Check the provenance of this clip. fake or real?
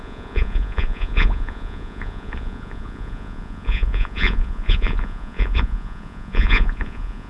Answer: fake